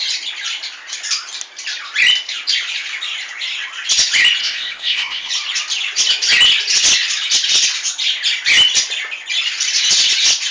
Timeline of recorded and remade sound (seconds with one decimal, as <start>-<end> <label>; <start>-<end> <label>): 0.0-4.4 recorded; 4.4-5.3 remade; 5.3-10.5 recorded